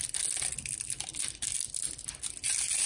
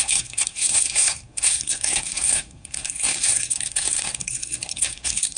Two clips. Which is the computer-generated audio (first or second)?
second